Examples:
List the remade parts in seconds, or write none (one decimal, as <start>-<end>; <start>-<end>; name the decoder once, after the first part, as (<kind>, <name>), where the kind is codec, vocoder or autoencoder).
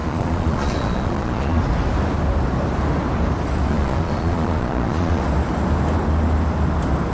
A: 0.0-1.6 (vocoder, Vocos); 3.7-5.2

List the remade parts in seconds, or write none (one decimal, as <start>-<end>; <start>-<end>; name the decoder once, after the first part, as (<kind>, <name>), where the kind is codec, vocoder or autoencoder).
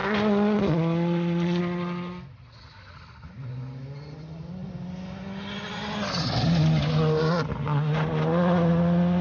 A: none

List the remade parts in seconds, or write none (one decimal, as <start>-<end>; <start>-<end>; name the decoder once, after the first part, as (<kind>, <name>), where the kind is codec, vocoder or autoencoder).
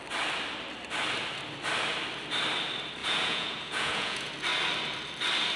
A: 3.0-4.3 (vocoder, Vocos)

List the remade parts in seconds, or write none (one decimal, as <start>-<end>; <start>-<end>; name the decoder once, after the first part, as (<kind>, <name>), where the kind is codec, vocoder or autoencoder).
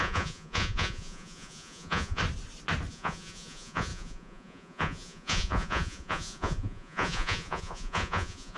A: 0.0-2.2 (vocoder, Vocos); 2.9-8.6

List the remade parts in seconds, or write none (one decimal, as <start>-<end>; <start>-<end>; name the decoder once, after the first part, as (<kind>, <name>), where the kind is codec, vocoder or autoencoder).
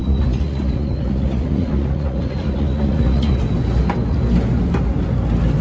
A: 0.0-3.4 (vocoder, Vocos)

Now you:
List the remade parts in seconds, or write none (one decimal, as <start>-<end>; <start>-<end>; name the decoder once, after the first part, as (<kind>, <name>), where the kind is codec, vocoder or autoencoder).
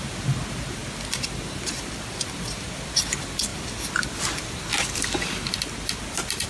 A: none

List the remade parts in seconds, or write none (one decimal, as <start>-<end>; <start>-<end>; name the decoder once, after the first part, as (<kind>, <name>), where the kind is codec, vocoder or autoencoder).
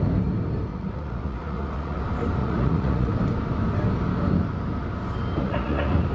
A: 0.7-2.0 (vocoder, Vocos); 2.4-3.1; 5.4-6.1